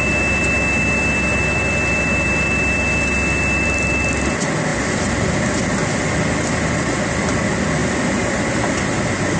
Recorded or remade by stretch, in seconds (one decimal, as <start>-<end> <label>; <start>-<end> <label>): 0.0-9.4 recorded